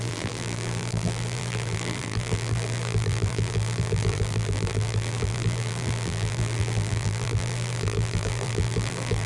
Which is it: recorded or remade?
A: remade